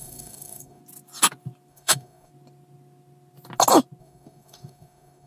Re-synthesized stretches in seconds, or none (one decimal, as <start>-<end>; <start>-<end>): 0.0-0.8; 1.7-2.3; 4.0-5.3